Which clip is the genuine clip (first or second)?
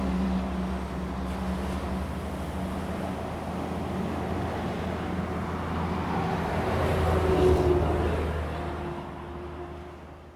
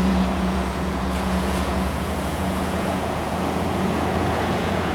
first